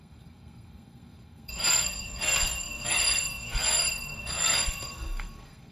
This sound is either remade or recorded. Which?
remade